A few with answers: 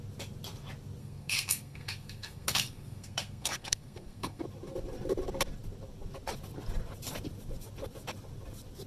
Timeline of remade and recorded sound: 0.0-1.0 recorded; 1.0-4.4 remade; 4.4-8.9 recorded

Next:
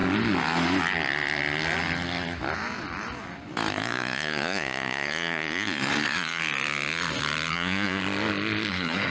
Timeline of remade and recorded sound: 0.0-3.7 recorded; 3.7-6.4 remade; 6.4-7.5 recorded; 7.5-8.0 remade; 8.0-8.7 recorded; 8.7-9.1 remade

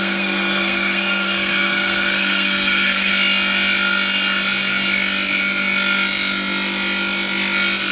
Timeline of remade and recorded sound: 0.0-3.1 remade; 3.1-7.9 recorded

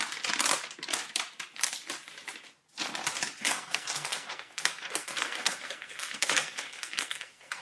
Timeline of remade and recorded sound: 0.0-3.4 recorded; 3.4-7.6 remade

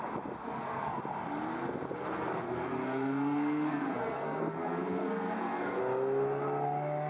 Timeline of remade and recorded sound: 0.0-0.4 recorded; 0.4-1.0 remade; 1.0-2.1 recorded; 2.1-5.8 remade; 5.8-7.1 recorded